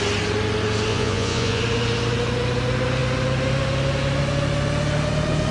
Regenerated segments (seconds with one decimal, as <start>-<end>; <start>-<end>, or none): 0.9-1.6